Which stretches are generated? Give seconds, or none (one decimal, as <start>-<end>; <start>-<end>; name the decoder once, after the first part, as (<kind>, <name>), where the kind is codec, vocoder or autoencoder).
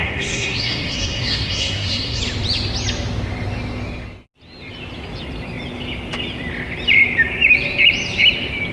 0.0-2.2 (codec, SNAC)